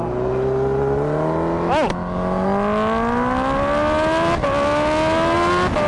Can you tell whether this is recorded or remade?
recorded